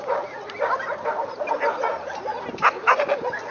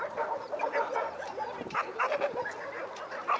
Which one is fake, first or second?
second